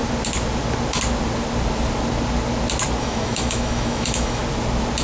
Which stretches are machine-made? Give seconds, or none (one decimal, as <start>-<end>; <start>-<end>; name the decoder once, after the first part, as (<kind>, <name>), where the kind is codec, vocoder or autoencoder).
3.0-4.4 (autoencoder, DAC-VAE)